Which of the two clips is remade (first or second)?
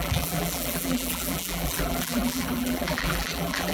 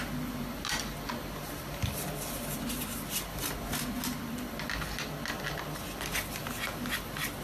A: first